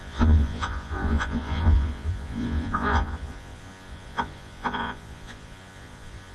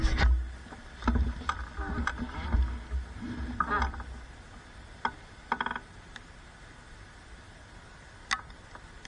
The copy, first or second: first